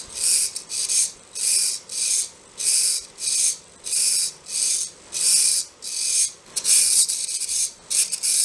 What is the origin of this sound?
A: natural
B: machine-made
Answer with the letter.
A